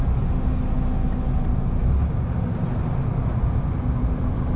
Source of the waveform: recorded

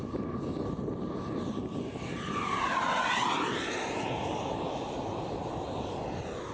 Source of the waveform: recorded